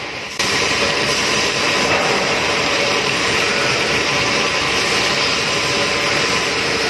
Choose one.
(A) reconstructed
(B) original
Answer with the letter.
A